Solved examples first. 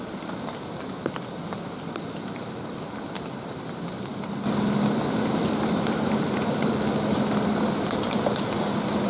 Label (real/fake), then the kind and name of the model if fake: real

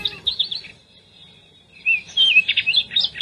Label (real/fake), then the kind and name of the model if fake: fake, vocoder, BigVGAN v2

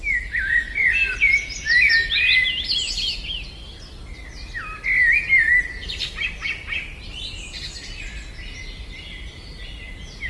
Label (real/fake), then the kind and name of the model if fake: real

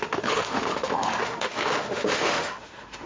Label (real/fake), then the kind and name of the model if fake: fake, autoencoder, DAC-VAE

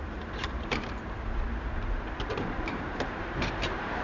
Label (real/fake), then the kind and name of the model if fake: fake, vocoder, BigVGAN v2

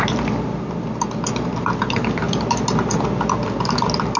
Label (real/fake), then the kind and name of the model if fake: real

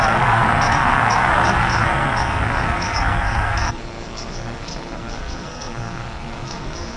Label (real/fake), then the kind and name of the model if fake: fake, codec, SNAC